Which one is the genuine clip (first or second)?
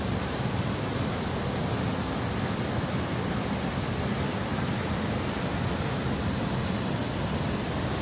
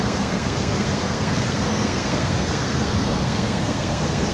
first